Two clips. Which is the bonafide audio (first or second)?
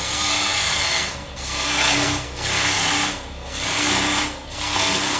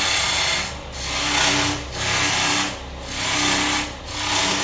second